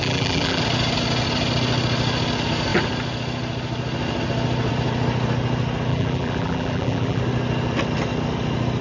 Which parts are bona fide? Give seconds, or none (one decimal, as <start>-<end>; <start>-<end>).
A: 0.6-5.9; 7.2-8.8